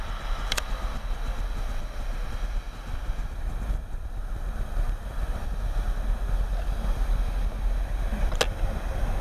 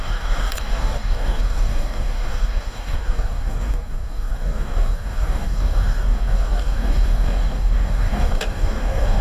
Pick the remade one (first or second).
second